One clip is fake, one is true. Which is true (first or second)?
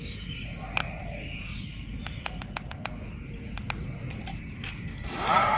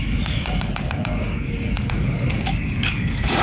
first